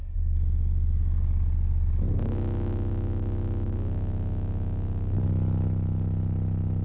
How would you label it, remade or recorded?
recorded